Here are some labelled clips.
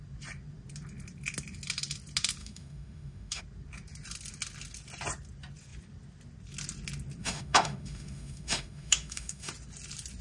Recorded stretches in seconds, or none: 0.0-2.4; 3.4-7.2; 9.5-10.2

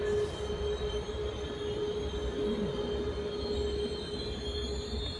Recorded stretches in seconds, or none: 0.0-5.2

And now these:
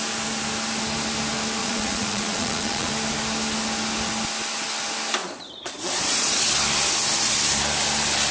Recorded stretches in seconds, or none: 0.0-1.6; 2.9-5.2; 6.4-8.3

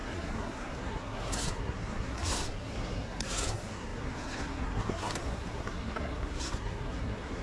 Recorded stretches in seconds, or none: none

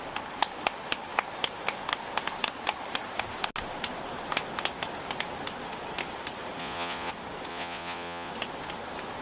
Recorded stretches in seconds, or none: 0.0-6.6; 7.1-7.5; 8.3-9.2

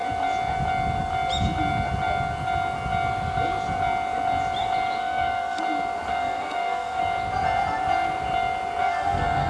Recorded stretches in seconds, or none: 0.0-5.0; 5.6-6.1; 7.0-8.8

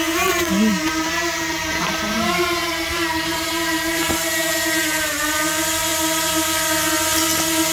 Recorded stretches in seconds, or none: 0.0-0.7; 5.2-5.9; 6.9-7.7

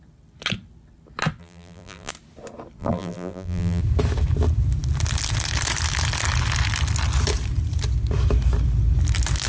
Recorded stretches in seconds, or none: 0.0-1.4; 2.1-2.8; 3.8-9.5